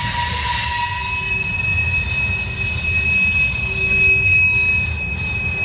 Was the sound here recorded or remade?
recorded